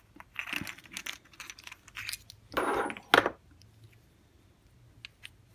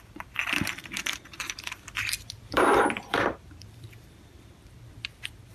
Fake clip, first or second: second